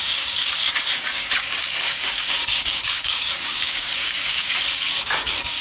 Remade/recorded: remade